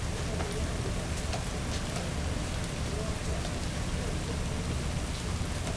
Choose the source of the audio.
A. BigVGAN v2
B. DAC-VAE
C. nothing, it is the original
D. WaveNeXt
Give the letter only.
C